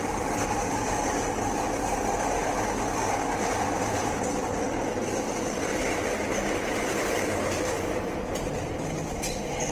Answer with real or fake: real